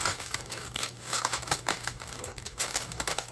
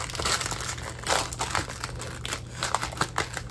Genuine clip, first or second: second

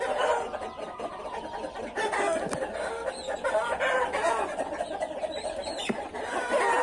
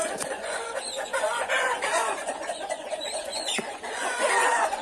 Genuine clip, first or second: first